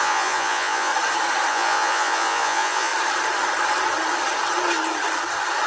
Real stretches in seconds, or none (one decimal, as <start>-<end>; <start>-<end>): 0.9-1.5; 2.9-5.7